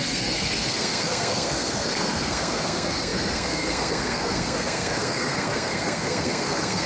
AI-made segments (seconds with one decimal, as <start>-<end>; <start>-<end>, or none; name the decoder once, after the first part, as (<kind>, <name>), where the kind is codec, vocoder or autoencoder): 0.0-6.9 (codec, SNAC)